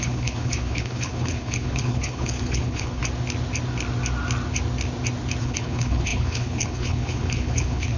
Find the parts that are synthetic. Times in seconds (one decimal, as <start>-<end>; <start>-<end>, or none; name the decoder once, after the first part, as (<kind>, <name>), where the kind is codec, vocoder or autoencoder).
0.0-3.0 (codec, HILCodec); 5.4-8.0